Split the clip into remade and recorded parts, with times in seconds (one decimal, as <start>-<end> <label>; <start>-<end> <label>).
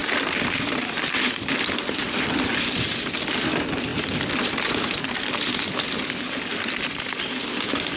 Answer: 0.0-1.3 remade; 1.3-8.0 recorded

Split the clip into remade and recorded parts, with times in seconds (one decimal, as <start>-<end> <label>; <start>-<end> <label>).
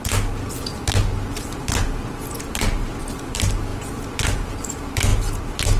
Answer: 0.0-5.8 recorded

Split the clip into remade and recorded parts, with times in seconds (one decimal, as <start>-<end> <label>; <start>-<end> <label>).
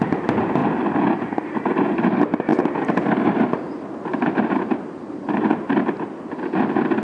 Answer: 0.0-0.6 recorded; 0.6-2.0 remade; 2.0-2.5 recorded; 2.5-3.2 remade; 3.2-4.1 recorded; 4.1-6.1 remade; 6.1-7.0 recorded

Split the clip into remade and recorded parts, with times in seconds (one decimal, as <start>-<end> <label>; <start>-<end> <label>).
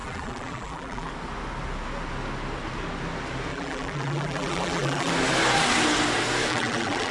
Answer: 0.0-1.1 remade; 1.1-3.5 recorded; 3.5-5.1 remade; 5.1-6.5 recorded; 6.5-7.1 remade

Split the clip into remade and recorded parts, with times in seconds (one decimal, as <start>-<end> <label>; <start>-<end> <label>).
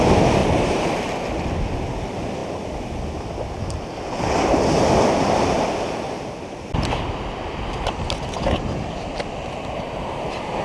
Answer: 0.0-0.4 recorded; 0.4-1.0 remade; 1.0-10.6 recorded